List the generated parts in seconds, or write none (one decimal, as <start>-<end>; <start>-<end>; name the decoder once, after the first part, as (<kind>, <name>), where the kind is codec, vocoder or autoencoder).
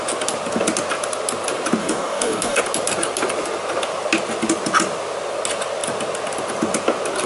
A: 1.8-2.6 (codec, DAC)